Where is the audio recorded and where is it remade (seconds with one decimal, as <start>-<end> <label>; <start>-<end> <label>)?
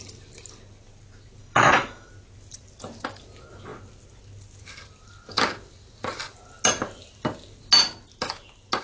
0.0-1.4 recorded; 1.4-2.1 remade; 2.1-8.8 recorded